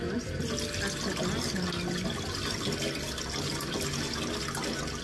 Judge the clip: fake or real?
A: real